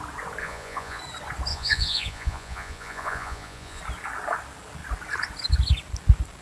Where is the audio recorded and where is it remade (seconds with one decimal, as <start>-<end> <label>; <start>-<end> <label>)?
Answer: 0.0-0.4 recorded; 0.4-1.0 remade; 1.0-1.5 recorded; 1.5-3.8 remade; 3.8-6.4 recorded